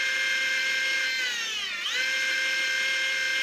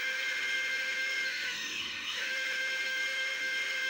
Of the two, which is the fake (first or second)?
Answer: second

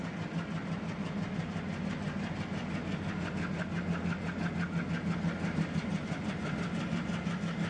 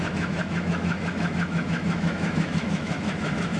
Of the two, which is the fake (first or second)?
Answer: second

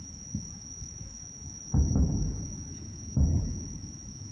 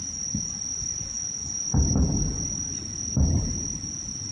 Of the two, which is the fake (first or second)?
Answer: first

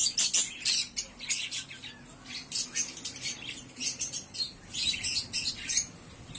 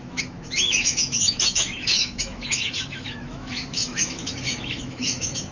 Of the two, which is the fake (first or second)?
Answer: second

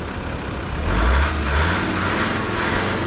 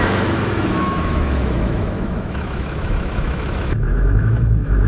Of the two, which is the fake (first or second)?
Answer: second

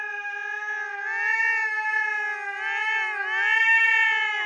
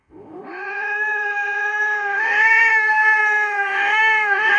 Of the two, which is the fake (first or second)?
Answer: second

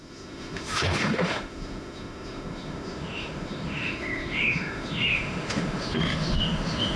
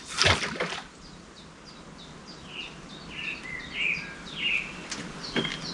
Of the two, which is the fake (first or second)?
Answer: first